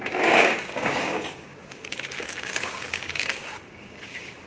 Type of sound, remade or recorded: remade